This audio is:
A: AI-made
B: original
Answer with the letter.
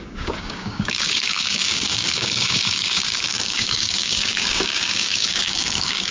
A